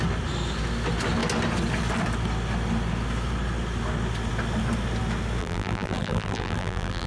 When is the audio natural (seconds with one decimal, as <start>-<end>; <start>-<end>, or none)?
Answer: 0.0-5.4